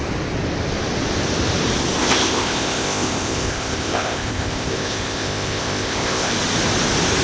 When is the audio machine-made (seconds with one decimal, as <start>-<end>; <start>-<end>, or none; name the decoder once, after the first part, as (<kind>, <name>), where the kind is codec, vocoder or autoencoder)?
2.0-6.3 (codec, ZipCodec)